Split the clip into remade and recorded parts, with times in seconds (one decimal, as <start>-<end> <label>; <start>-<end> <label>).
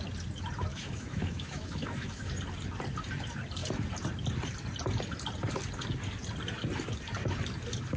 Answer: 0.0-0.7 recorded; 0.7-2.3 remade; 2.3-8.0 recorded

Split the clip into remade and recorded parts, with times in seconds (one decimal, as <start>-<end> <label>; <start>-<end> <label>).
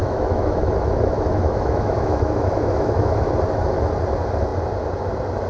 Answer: 0.0-3.3 remade; 3.3-5.5 recorded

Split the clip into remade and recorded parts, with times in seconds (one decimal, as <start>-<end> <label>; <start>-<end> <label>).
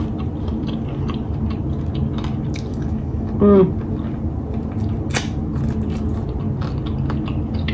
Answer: 0.0-2.7 recorded; 2.7-3.3 remade; 3.3-7.7 recorded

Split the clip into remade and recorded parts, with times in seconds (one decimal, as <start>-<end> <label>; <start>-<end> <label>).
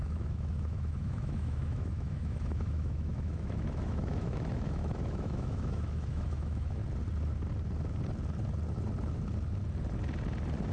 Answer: 0.0-6.8 remade; 6.8-10.7 recorded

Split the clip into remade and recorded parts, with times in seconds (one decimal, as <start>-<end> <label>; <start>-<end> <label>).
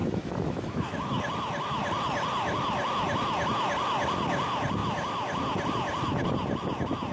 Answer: 0.0-1.2 remade; 1.2-7.1 recorded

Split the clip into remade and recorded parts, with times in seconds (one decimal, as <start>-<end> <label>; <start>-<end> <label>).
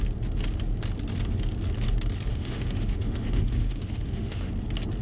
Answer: 0.0-2.3 recorded; 2.3-4.5 remade; 4.5-5.0 recorded